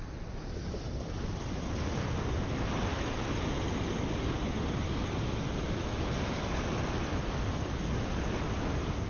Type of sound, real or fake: real